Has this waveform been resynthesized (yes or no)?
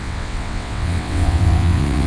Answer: yes